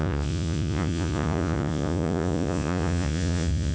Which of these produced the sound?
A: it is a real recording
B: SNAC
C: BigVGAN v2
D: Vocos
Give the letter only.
D